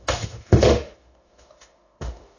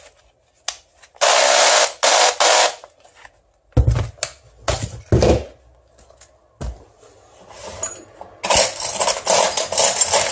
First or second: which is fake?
first